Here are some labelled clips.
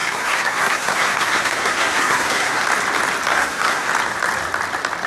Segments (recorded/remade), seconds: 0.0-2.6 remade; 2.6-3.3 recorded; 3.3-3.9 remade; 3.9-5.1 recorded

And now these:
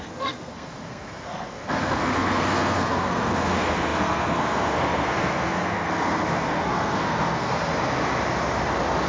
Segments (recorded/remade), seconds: 0.0-7.7 remade; 7.7-9.1 recorded

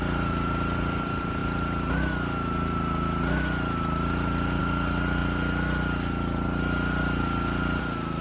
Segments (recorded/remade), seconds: 0.0-8.2 recorded

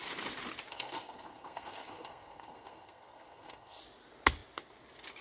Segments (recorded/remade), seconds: 0.0-0.7 recorded; 0.7-3.8 remade; 3.8-5.2 recorded

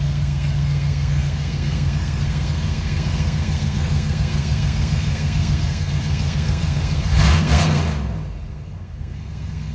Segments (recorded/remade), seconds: 0.0-7.8 remade; 7.8-8.5 recorded; 8.5-9.7 remade